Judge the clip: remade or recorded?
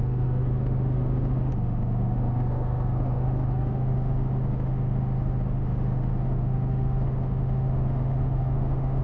remade